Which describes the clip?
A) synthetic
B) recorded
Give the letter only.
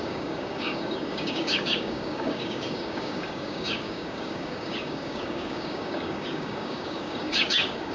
A